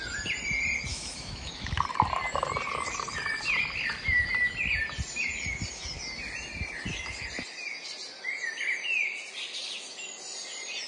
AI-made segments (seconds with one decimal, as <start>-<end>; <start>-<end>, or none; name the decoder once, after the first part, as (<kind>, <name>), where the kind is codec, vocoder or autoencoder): 0.9-1.8 (autoencoder, DAC-VAE)

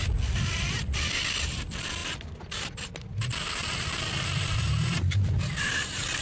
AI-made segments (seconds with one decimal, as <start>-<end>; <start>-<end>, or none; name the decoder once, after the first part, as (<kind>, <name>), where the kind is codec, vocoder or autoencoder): none

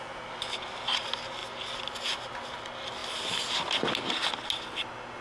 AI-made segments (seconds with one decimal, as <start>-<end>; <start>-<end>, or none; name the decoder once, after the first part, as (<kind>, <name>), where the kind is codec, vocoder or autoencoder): none

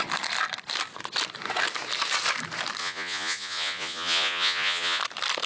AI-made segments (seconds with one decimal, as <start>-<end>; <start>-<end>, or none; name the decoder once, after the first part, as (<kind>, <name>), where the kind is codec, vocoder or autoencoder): 2.8-5.0 (vocoder, Vocos)